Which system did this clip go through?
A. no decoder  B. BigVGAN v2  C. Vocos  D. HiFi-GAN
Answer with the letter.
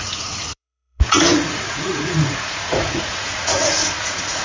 C